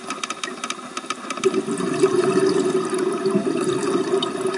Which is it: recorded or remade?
recorded